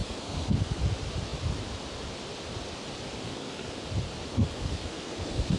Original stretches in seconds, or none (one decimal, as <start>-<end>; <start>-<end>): 0.8-3.2; 3.8-4.3